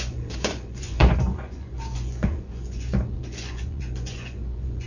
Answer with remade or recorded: remade